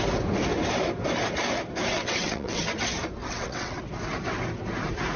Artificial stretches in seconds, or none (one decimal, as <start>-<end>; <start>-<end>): 1.9-2.6; 3.2-3.8